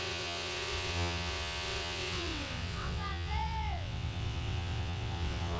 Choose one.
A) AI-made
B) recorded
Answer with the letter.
A